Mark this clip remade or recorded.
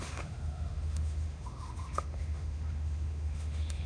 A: remade